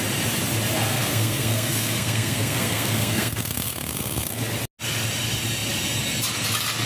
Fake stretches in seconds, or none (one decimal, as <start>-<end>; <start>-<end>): 0.9-4.4